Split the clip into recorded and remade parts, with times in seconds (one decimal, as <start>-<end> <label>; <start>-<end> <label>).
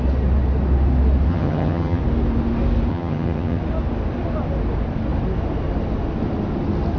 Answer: 0.0-1.3 recorded; 1.3-2.0 remade; 2.0-2.9 recorded; 2.9-3.6 remade; 3.6-7.0 recorded